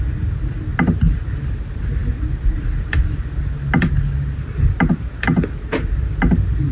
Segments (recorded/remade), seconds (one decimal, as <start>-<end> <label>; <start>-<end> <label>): 0.0-6.7 recorded